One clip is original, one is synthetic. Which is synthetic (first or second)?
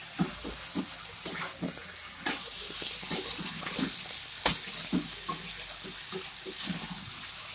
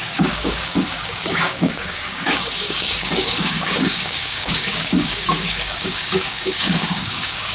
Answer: second